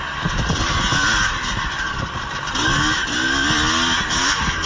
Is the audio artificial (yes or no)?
no